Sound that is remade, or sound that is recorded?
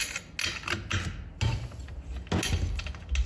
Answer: recorded